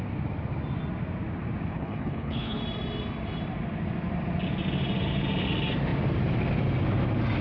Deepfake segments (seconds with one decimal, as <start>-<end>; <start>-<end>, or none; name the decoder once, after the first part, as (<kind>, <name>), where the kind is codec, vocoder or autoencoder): 1.7-2.6 (codec, HILCodec)